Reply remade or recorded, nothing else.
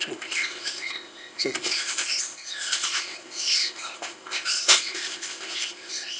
remade